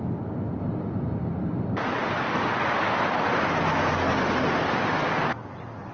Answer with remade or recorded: recorded